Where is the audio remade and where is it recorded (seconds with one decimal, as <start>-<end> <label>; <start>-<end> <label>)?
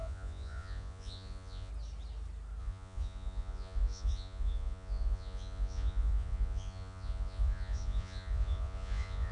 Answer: 0.0-1.7 remade; 1.7-2.6 recorded; 2.6-9.3 remade